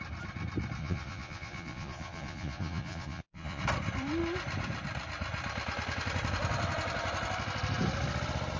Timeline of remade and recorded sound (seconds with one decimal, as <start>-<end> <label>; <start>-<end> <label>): 0.0-0.8 recorded; 0.8-3.6 remade; 3.6-8.6 recorded